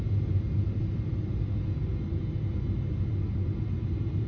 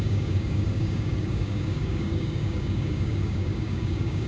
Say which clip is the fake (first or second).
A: second